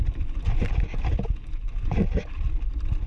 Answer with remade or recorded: recorded